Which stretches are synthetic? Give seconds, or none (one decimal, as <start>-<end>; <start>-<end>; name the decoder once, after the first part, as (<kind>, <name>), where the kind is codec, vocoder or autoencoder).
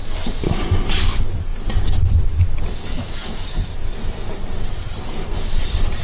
2.9-3.4 (autoencoder, DAC-VAE)